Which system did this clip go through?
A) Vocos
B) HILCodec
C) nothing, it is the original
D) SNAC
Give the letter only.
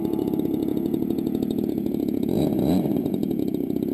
A